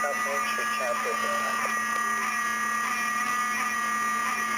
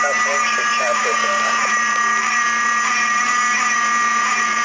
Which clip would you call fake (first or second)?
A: second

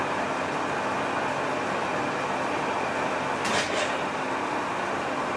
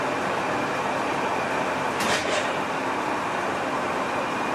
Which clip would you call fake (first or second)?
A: second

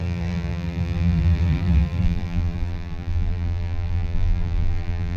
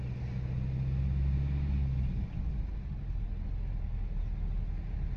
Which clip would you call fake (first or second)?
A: first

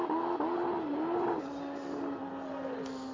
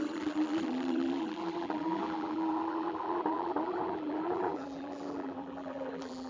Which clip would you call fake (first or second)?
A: second